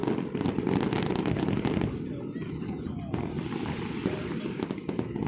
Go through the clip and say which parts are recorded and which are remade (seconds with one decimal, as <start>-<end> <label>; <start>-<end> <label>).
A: 0.0-5.3 recorded